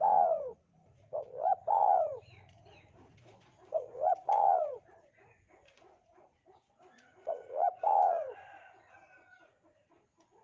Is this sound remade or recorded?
remade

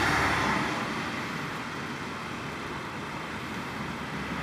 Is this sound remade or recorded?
recorded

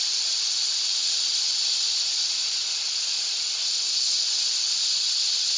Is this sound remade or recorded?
remade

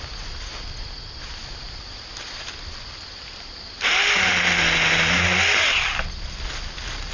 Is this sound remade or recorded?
recorded